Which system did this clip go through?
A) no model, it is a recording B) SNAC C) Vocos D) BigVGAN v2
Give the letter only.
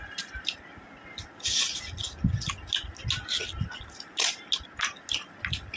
A